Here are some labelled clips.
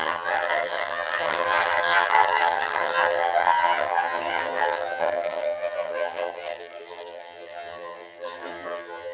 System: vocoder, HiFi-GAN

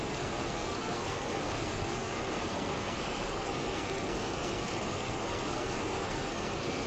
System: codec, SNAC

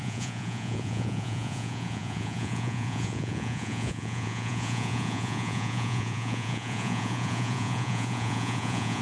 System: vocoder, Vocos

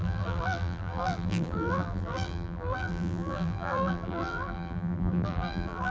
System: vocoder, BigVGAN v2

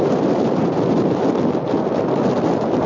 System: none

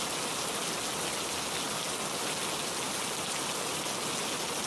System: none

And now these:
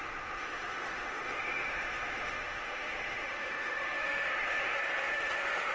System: autoencoder, DAC-VAE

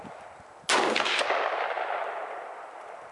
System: none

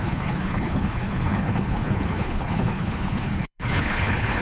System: codec, HILCodec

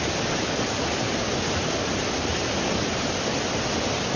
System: none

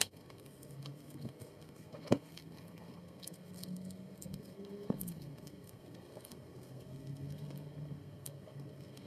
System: codec, SNAC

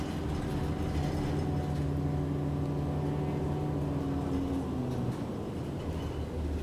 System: none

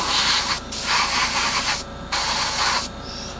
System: none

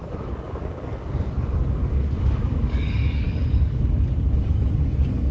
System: codec, DAC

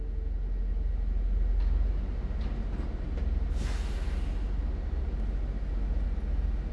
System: none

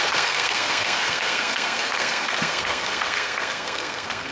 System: codec, SNAC